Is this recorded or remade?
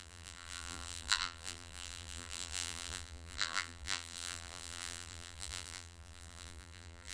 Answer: remade